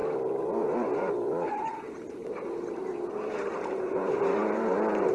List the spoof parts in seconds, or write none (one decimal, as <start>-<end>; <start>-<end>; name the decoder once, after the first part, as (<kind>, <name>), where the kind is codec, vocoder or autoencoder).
1.0-5.1 (vocoder, BigVGAN v2)